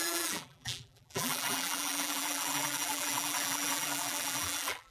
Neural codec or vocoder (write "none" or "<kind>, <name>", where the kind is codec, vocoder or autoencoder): vocoder, BigVGAN v2